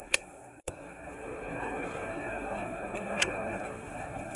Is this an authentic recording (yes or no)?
no